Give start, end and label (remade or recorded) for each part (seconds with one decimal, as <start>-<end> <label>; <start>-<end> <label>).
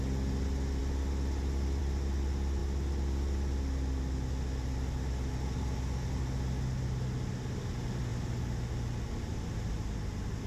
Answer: 0.0-10.5 recorded